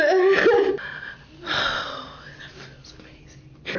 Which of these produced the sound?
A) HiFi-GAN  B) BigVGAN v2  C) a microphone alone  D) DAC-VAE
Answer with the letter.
C